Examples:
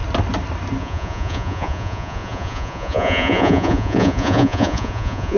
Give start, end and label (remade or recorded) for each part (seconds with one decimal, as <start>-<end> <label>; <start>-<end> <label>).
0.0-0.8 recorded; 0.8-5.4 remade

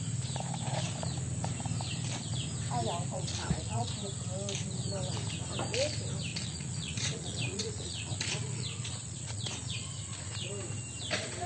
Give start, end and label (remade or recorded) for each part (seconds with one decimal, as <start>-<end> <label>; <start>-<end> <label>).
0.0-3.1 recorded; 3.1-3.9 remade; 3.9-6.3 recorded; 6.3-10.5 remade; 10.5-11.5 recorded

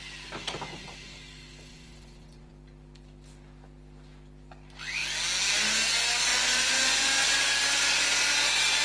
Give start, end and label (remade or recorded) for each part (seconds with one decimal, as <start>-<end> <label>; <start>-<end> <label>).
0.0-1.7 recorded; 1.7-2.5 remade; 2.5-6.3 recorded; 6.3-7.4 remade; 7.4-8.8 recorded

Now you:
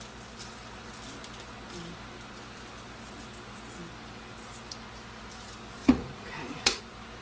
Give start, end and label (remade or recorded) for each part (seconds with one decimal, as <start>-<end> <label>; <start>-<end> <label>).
0.0-5.8 recorded; 5.8-6.8 remade; 6.8-7.2 recorded